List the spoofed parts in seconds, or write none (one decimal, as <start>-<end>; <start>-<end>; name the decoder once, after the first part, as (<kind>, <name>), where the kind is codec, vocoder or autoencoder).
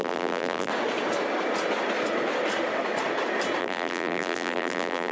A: 0.0-0.7 (vocoder, BigVGAN v2); 3.6-5.1